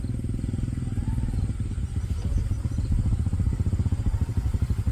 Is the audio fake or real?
real